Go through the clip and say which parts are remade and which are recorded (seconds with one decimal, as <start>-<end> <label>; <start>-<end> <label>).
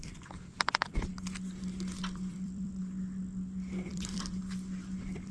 0.0-2.0 recorded; 2.0-2.7 remade; 2.7-3.9 recorded; 3.9-4.4 remade; 4.4-5.3 recorded